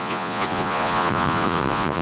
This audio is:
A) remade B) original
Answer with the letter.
A